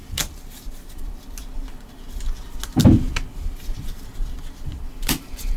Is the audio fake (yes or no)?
no